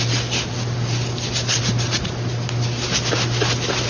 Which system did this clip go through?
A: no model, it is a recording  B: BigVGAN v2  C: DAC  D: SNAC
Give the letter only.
A